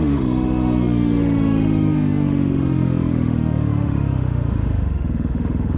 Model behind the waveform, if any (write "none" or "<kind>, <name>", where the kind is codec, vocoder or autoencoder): autoencoder, DAC-VAE